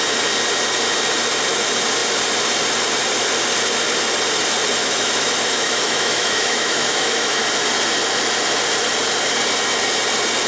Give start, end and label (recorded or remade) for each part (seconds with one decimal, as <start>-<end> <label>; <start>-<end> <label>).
0.0-4.8 recorded; 4.8-7.4 remade; 7.4-10.5 recorded